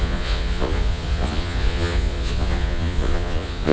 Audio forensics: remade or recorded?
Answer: remade